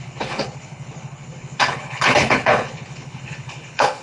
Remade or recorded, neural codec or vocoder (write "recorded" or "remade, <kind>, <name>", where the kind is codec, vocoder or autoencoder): remade, codec, HILCodec